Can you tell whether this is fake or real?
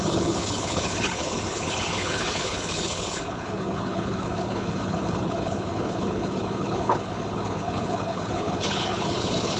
fake